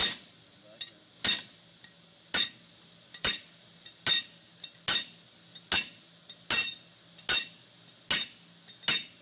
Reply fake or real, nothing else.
real